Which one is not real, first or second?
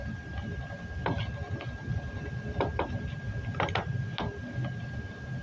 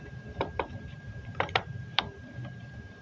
second